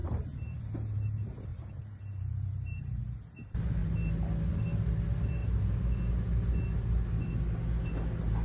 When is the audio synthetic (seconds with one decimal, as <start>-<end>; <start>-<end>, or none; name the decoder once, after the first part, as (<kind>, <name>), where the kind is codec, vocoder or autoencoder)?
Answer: 0.0-0.7 (vocoder, BigVGAN v2); 1.5-3.0